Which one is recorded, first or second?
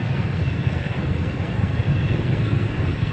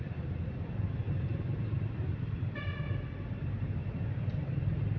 second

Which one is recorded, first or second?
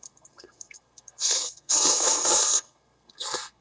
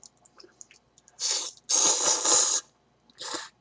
second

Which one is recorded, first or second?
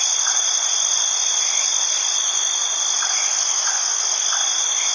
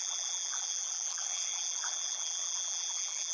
first